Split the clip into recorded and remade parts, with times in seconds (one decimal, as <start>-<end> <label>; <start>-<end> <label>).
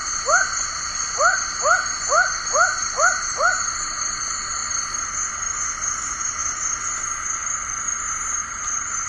0.0-8.4 recorded; 8.4-9.1 remade